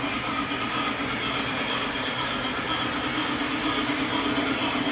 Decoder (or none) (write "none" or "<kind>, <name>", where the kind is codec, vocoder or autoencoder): none